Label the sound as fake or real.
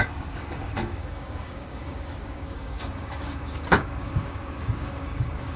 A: fake